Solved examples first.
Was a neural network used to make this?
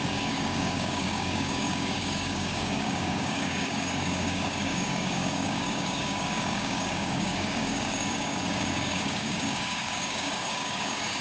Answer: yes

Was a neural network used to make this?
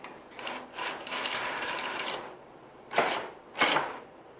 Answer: yes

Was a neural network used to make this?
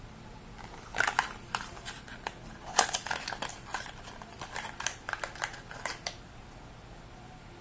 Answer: no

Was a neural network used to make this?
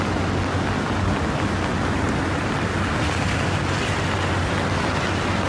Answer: no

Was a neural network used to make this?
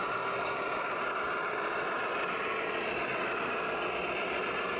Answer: no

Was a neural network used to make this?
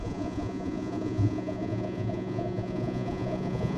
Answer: yes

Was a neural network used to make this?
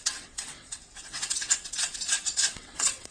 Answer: yes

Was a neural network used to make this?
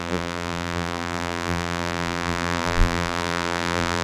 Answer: yes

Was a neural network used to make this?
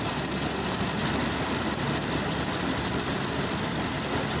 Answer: no